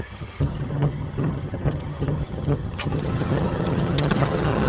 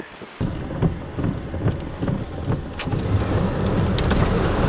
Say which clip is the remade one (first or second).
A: first